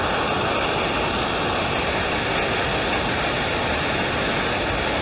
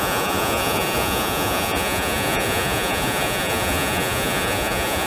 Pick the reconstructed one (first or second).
second